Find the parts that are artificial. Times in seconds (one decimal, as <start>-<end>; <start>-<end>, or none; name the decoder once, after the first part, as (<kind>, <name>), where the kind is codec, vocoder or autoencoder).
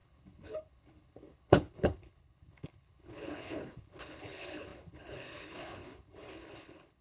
0.0-7.0 (codec, HILCodec)